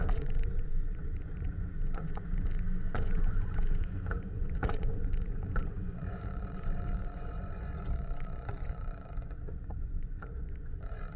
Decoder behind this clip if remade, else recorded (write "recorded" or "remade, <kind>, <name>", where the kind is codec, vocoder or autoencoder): remade, vocoder, Vocos